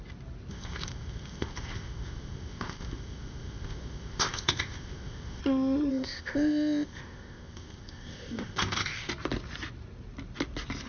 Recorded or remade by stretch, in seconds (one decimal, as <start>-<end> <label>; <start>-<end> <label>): 0.0-0.5 recorded; 0.5-5.4 remade; 5.4-5.9 recorded; 5.9-9.1 remade; 9.1-10.9 recorded